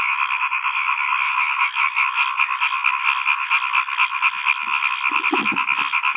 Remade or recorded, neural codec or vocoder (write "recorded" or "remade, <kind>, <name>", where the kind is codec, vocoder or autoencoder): recorded